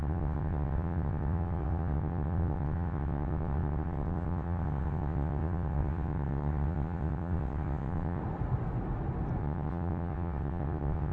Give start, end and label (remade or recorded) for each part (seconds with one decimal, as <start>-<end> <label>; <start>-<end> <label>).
0.0-8.2 remade; 8.2-9.4 recorded; 9.4-11.1 remade